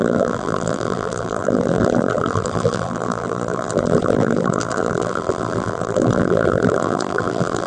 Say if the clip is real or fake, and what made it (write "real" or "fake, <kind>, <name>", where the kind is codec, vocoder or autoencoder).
fake, vocoder, BigVGAN v2